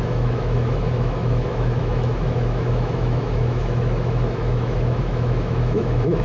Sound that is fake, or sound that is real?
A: fake